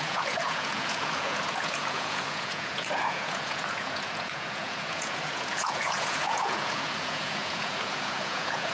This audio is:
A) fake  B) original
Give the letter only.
A